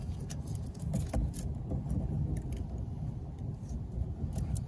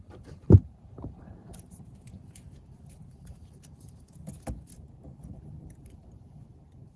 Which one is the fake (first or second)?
second